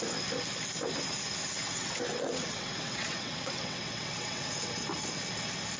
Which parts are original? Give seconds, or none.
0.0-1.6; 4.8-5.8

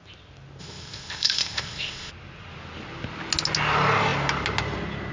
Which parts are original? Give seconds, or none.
0.0-0.6; 2.1-5.1

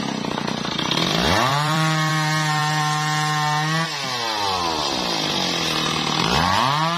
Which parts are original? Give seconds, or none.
0.0-1.5; 2.1-7.0

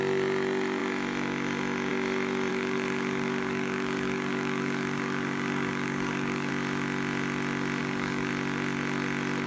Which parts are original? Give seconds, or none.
0.0-2.5; 6.5-7.8; 8.3-9.5

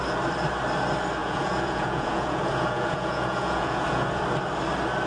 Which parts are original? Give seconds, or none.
0.0-1.2; 4.2-5.1

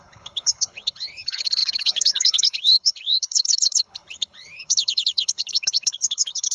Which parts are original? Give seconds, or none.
none

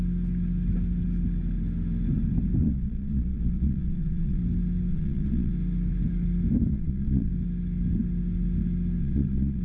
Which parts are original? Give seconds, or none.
0.0-2.6; 4.4-4.9; 5.5-6.7; 7.3-9.0

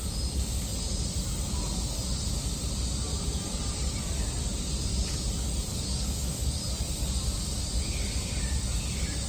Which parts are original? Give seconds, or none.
0.0-5.7; 6.6-9.3